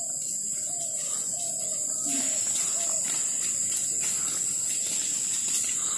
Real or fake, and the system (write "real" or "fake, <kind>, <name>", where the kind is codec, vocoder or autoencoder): real